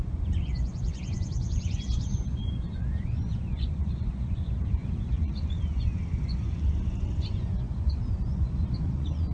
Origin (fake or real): fake